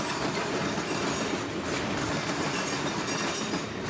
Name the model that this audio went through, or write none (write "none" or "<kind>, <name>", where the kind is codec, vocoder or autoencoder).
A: none